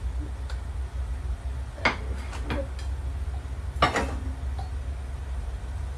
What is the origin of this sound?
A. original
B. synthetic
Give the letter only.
A